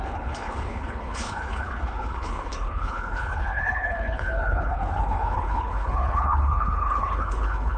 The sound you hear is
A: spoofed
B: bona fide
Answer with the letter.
A